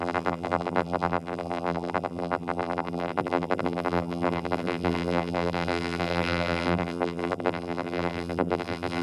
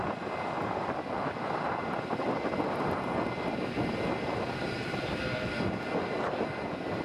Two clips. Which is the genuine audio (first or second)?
second